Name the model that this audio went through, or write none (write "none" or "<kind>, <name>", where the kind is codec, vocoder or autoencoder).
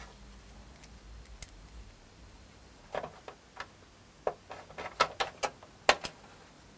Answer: none